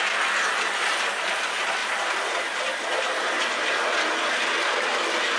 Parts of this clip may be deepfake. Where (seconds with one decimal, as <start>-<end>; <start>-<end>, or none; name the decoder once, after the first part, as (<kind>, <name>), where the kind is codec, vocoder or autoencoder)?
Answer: none